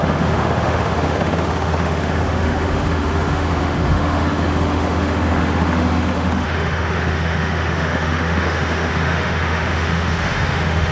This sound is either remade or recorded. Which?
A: remade